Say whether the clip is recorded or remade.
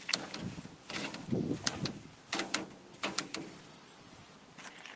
recorded